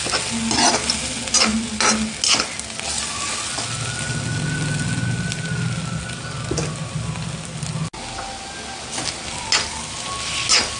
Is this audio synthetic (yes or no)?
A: no